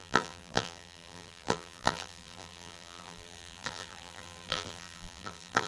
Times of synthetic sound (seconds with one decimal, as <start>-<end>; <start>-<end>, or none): 0.0-5.7